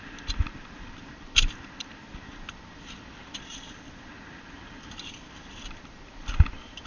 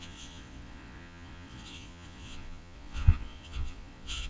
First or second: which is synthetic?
second